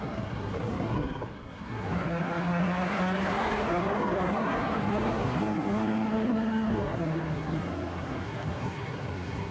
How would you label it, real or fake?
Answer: fake